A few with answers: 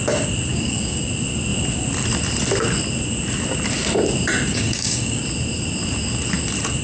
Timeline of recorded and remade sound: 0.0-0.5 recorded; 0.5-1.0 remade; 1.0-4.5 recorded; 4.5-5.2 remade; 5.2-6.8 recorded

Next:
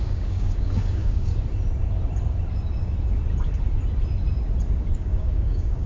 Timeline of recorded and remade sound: 0.0-1.3 remade; 1.3-4.8 recorded; 4.8-5.9 remade

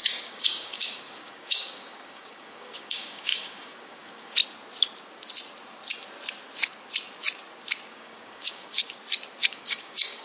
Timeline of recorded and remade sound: 0.0-4.4 remade; 4.4-7.9 recorded; 7.9-8.8 remade; 8.8-9.5 recorded; 9.5-10.2 remade